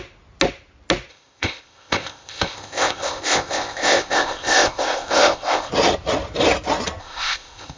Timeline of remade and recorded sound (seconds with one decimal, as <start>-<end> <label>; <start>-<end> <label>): 0.0-1.1 recorded; 1.1-5.7 remade; 5.7-7.0 recorded; 7.0-7.8 remade